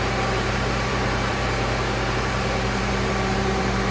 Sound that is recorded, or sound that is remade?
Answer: remade